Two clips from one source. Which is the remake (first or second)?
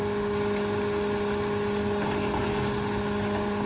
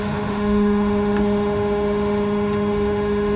second